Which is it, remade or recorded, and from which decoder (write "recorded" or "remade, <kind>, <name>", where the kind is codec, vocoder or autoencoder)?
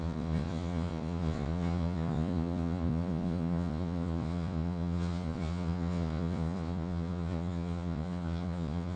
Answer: remade, vocoder, Vocos